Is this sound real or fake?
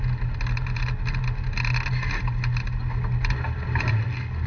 real